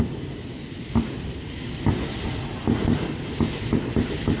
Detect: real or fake real